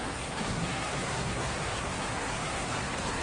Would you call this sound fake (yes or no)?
yes